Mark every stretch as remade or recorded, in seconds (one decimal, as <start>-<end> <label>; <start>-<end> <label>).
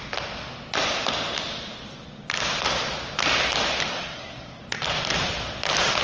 0.0-3.9 recorded; 3.9-4.6 remade; 4.6-6.0 recorded